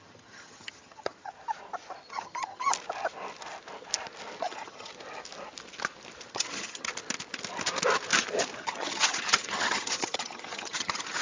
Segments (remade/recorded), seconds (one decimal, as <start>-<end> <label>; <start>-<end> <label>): 0.0-1.3 remade; 1.3-2.1 recorded; 2.1-2.7 remade; 2.7-4.4 recorded; 4.4-4.9 remade; 4.9-6.3 recorded; 6.3-6.9 remade; 6.9-8.6 recorded; 8.6-11.2 remade